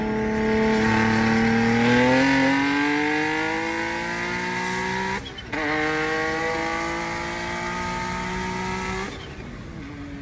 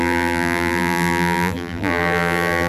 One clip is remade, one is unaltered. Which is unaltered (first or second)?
first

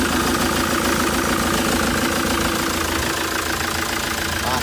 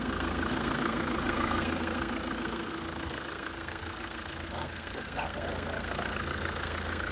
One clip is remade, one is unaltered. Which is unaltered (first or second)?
first